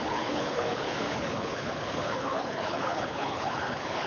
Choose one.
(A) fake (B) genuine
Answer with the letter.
A